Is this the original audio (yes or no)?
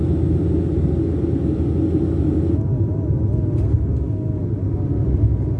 yes